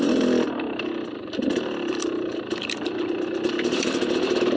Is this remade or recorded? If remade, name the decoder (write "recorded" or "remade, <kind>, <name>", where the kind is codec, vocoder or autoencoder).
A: remade, vocoder, BigVGAN v2